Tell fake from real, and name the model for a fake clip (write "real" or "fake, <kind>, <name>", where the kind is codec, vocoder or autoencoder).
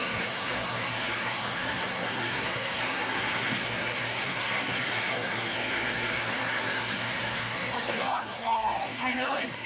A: fake, codec, SNAC